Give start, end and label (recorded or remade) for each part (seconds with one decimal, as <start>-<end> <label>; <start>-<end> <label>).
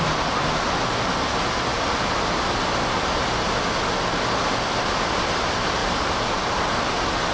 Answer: 0.0-1.7 recorded; 1.7-2.3 remade; 2.3-7.3 recorded